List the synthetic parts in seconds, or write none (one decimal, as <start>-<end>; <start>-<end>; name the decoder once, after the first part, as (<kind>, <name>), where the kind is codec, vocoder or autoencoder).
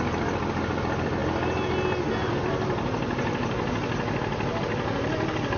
none